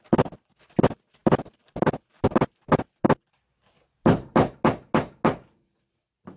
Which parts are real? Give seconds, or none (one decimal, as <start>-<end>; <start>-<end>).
0.0-6.4